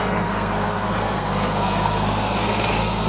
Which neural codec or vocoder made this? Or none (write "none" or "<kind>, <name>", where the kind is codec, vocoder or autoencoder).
codec, SNAC